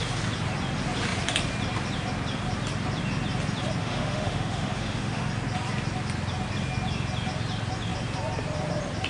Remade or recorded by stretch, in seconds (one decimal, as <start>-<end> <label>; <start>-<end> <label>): 0.0-3.8 recorded; 3.8-5.3 remade; 5.3-9.1 recorded